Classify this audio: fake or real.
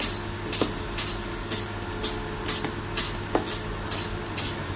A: real